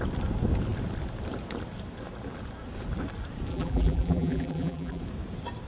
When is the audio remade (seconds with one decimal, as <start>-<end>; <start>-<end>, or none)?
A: 3.5-5.0